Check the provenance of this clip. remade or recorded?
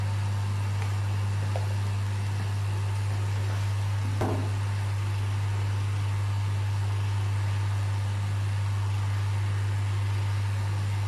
recorded